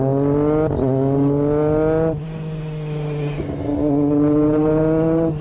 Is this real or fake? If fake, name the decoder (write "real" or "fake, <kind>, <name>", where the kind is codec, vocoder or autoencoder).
real